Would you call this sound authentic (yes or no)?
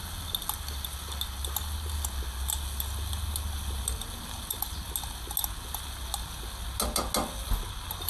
yes